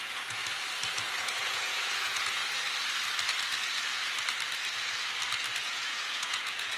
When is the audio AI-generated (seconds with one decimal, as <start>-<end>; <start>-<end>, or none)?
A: 0.0-0.4; 1.2-2.4; 5.6-6.8